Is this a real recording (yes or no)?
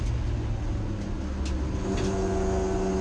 yes